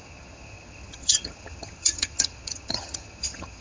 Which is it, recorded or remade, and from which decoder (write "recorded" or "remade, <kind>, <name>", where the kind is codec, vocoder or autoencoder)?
remade, vocoder, HiFi-GAN